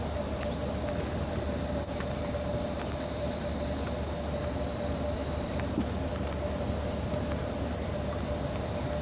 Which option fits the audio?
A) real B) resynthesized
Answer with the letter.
A